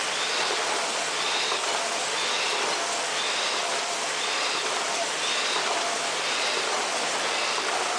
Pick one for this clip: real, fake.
real